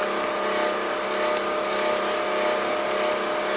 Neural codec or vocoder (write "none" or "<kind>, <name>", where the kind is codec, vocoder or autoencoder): none